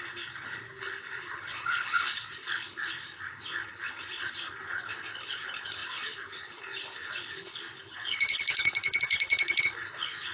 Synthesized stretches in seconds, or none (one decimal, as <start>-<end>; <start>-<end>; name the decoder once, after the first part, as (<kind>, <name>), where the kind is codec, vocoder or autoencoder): 0.0-10.3 (codec, HILCodec)